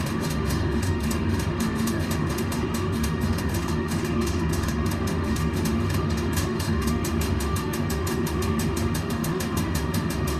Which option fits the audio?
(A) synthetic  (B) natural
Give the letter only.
A